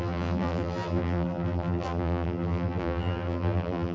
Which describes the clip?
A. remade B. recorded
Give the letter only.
A